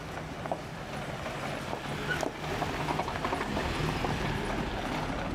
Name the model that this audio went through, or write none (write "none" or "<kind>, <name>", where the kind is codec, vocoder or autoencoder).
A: none